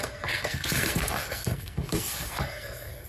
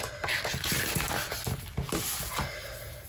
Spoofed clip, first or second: first